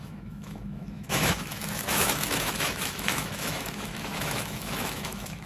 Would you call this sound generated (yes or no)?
yes